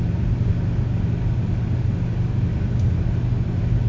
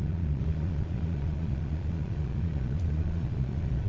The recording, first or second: first